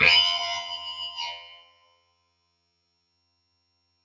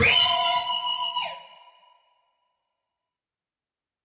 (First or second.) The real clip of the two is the second